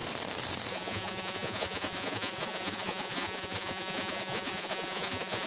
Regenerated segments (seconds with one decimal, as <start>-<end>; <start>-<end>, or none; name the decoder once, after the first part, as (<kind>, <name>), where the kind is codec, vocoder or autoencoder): 0.7-5.5 (vocoder, Vocos)